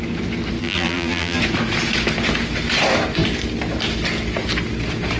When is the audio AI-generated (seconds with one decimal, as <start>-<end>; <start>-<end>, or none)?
0.6-1.4